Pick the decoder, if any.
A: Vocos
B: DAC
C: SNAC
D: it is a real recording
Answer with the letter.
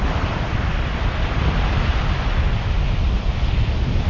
D